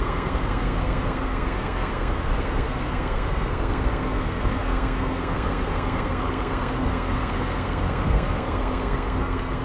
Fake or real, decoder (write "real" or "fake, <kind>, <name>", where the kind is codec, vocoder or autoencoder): fake, codec, SNAC